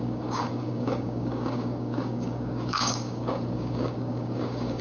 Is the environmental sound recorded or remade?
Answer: remade